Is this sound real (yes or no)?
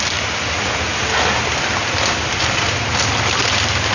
yes